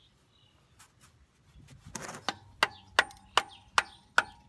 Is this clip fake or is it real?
real